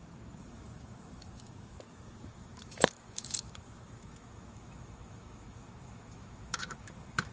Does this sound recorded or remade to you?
remade